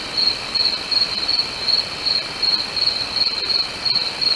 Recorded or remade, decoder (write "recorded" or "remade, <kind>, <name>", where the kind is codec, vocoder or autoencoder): recorded